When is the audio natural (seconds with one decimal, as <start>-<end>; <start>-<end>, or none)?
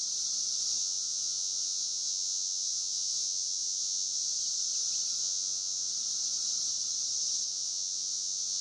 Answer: 0.0-0.8; 4.3-5.2; 5.9-7.5